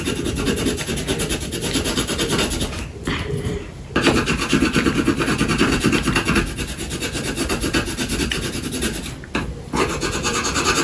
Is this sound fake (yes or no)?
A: no